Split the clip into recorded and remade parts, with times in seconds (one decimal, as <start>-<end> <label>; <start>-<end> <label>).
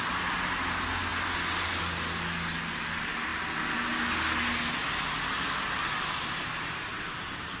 0.0-7.6 recorded